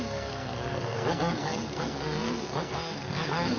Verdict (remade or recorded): remade